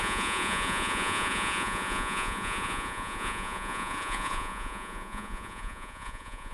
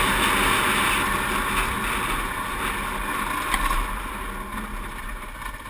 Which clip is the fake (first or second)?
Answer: first